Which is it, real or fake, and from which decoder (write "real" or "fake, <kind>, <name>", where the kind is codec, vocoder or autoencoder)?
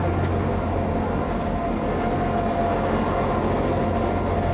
real